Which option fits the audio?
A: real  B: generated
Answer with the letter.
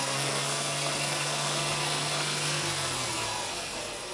B